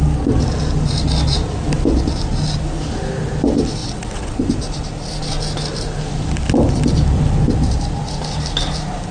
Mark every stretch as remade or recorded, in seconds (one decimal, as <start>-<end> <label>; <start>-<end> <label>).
0.0-3.8 recorded; 3.8-4.4 remade; 4.4-9.1 recorded